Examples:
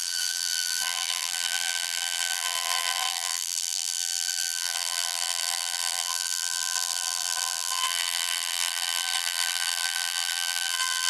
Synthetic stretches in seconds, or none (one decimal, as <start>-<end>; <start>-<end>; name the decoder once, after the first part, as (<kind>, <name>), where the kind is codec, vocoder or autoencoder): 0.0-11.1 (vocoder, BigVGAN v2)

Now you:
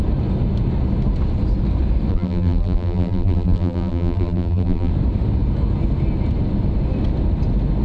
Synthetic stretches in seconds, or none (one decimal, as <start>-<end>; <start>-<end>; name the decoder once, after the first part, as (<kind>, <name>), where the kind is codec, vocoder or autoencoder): 2.1-4.9 (vocoder, BigVGAN v2)

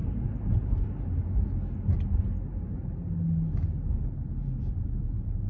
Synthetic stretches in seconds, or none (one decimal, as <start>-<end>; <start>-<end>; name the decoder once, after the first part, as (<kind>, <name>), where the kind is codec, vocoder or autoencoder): 4.0-5.0 (vocoder, BigVGAN v2)

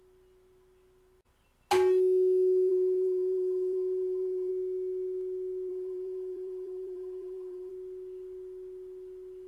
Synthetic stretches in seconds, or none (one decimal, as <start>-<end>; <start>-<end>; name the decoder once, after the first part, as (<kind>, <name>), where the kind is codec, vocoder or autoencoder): 2.7-4.5 (vocoder, BigVGAN v2); 5.7-7.7